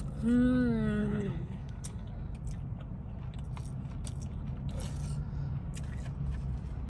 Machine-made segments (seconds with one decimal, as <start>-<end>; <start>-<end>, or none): 1.0-2.1